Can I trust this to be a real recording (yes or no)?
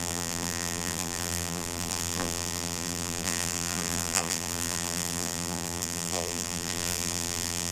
no